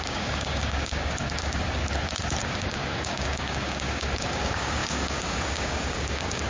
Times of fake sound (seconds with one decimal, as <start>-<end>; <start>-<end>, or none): 0.0-1.8; 2.4-6.5